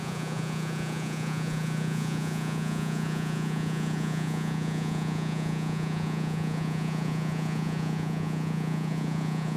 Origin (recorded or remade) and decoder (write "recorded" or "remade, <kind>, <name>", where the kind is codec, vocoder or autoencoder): remade, vocoder, Vocos